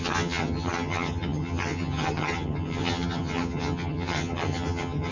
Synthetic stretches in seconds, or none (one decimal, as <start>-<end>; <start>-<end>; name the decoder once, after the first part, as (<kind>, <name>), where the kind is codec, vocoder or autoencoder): 0.0-5.1 (vocoder, HiFi-GAN)